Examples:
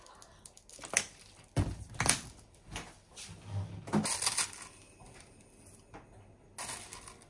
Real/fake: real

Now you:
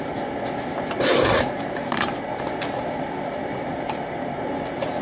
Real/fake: fake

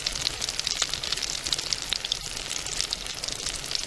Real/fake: real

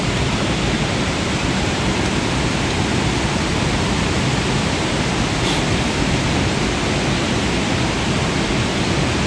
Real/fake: real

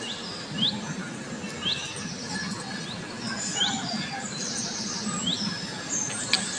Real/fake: real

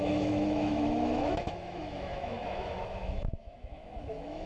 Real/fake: fake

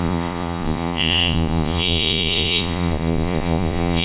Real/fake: fake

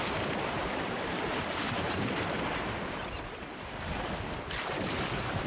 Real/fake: real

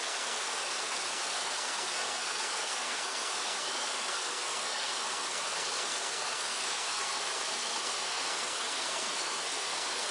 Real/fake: fake